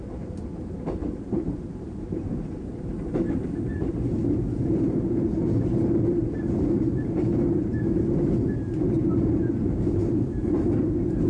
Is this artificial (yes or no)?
yes